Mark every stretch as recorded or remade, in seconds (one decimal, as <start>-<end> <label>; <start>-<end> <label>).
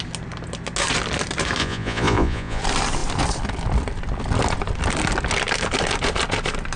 0.0-1.6 recorded; 1.6-2.6 remade; 2.6-6.8 recorded